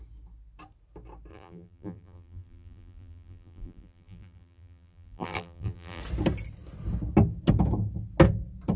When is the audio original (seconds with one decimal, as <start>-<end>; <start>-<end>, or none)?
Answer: 0.0-1.3; 6.0-8.8